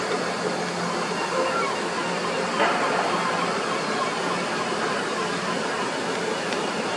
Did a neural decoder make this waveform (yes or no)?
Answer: no